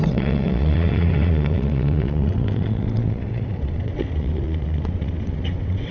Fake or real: fake